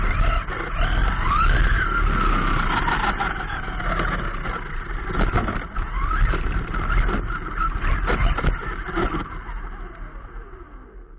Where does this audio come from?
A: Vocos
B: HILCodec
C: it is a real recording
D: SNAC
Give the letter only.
C